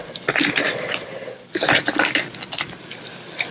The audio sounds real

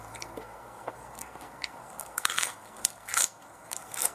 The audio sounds fake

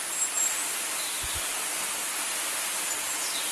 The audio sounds real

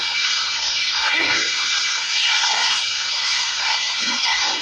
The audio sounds fake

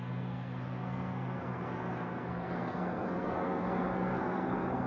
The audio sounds fake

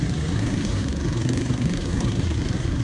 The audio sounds fake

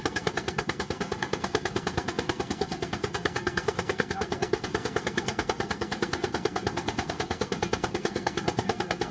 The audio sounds fake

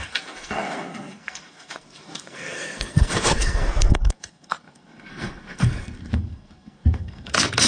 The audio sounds fake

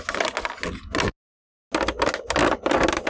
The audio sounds real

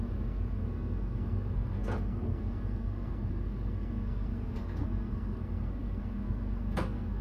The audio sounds fake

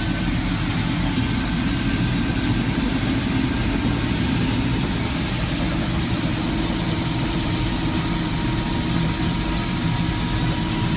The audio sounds real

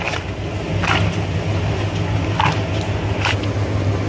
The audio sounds real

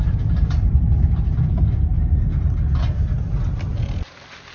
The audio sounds real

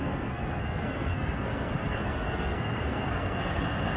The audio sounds fake